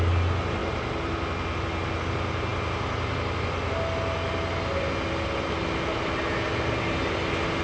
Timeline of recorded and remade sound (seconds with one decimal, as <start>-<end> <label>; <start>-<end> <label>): 0.0-7.6 recorded